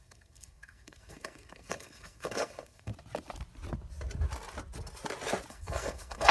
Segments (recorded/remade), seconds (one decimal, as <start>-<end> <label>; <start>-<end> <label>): 0.0-2.9 remade; 2.9-5.5 recorded; 5.5-6.3 remade